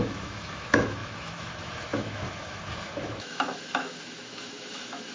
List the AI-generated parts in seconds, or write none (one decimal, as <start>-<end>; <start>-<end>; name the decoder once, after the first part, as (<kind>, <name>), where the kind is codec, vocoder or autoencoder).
0.0-5.1 (autoencoder, DAC-VAE)